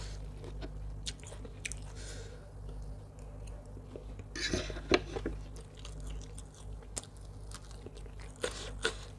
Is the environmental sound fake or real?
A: real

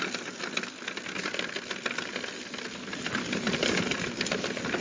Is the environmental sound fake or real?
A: real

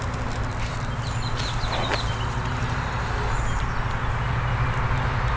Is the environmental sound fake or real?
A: real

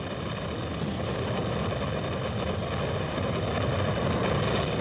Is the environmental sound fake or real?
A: real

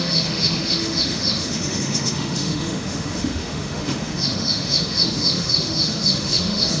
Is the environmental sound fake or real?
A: fake